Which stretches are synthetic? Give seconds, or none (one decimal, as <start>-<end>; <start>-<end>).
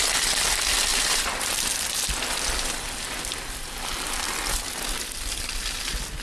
none